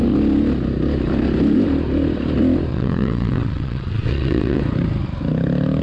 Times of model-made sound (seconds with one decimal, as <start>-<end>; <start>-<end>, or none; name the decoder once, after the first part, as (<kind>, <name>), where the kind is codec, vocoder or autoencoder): 2.7-4.6 (vocoder, WaveNeXt)